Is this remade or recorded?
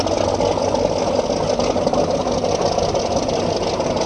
recorded